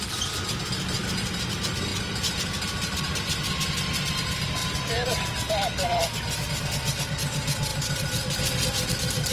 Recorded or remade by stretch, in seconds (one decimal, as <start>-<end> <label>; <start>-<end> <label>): 0.0-9.3 recorded